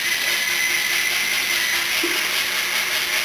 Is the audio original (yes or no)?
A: yes